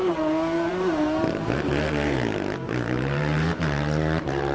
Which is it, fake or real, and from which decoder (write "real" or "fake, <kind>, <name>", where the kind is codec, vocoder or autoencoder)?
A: fake, vocoder, BigVGAN v2